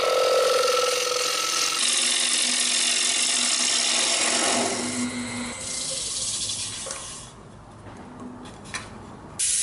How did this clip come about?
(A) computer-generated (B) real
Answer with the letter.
B